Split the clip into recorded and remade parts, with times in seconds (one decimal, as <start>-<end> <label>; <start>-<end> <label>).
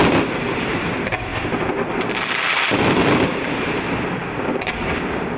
0.0-1.3 recorded; 1.3-3.6 remade; 3.6-5.4 recorded